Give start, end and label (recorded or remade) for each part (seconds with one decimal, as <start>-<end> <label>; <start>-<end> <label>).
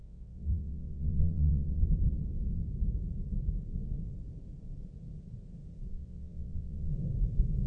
0.0-1.8 remade; 1.8-5.9 recorded; 5.9-6.9 remade; 6.9-7.7 recorded